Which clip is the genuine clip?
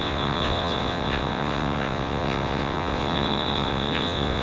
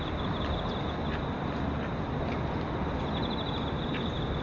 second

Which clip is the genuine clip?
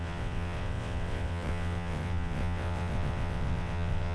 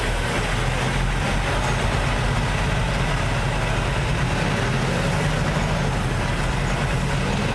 second